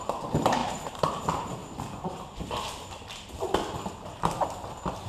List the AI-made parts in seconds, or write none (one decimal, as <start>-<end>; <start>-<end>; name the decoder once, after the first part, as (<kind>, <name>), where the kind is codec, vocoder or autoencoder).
0.0-1.6 (vocoder, BigVGAN v2)